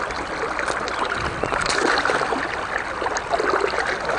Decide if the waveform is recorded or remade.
recorded